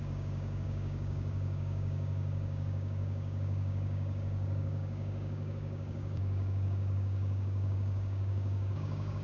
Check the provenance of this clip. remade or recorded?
remade